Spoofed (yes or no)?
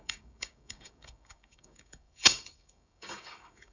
yes